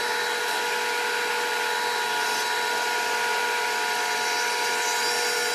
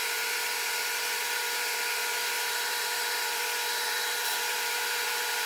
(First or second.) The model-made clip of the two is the second